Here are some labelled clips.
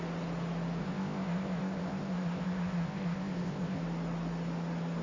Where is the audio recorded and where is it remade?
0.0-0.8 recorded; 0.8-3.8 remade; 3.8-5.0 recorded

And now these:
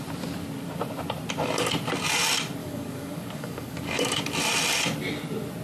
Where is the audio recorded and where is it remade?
0.0-2.6 recorded; 2.6-4.2 remade; 4.2-5.6 recorded